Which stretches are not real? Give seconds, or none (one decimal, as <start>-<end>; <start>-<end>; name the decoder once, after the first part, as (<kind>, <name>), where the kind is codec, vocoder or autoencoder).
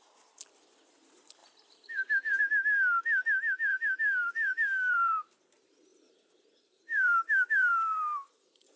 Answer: 1.4-2.4 (vocoder, BigVGAN v2); 3.7-5.4; 5.9-8.8